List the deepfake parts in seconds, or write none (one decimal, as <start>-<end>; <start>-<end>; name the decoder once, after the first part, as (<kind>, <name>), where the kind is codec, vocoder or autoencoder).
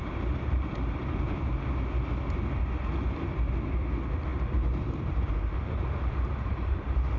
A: 0.0-1.4 (vocoder, BigVGAN v2); 4.3-7.2